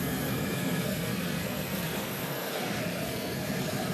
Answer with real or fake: fake